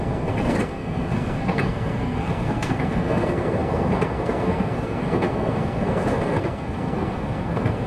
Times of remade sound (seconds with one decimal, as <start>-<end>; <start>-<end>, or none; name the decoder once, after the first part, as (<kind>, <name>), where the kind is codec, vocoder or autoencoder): 0.0-7.9 (codec, SNAC)